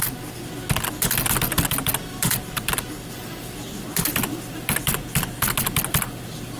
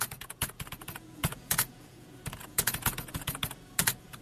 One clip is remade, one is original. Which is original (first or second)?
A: first